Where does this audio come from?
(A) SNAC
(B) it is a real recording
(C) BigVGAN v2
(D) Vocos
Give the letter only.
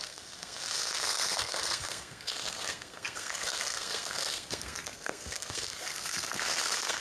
A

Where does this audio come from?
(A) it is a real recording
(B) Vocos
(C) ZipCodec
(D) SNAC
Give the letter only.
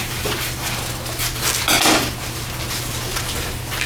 A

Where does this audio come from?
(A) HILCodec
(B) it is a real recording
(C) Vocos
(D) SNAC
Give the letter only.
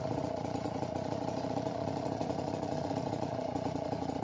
C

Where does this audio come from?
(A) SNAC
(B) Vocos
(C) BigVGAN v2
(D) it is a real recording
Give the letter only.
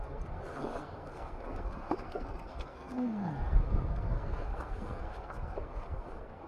A